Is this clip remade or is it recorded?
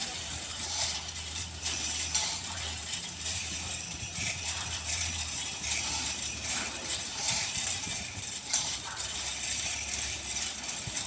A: remade